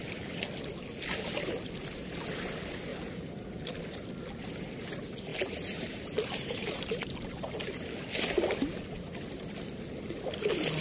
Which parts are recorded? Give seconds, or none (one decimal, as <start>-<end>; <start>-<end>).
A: 0.0-2.9; 3.7-5.3; 7.5-10.8